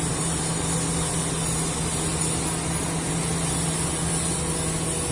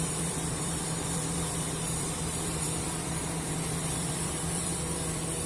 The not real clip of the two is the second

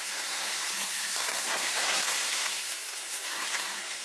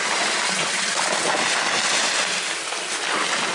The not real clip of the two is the first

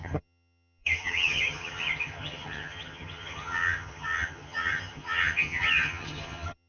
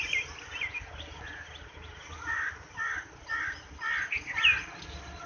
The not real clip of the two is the first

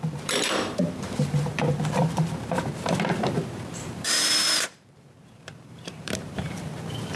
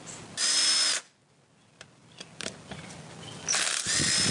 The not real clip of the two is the first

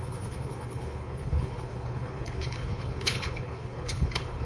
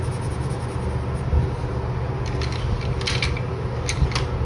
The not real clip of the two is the first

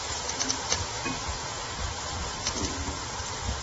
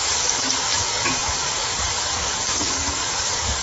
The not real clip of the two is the second